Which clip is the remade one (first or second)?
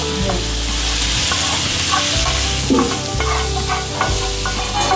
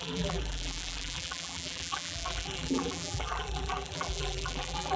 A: second